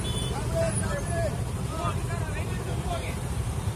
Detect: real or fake fake